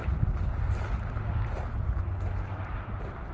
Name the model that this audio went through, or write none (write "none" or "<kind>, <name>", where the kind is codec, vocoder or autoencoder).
none